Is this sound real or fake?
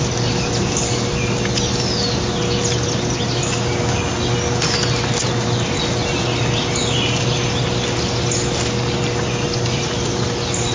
real